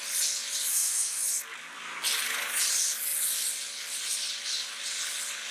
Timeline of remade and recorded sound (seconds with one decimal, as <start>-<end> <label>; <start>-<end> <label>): 0.0-0.7 recorded; 0.7-1.2 remade; 1.2-5.5 recorded